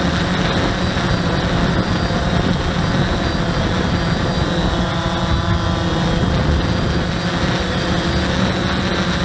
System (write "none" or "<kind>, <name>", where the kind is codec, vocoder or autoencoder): none